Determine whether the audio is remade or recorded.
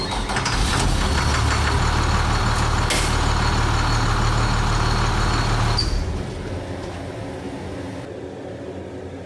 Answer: recorded